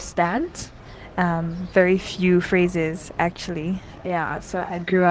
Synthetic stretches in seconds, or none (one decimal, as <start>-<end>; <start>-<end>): 0.0-0.8; 3.9-5.1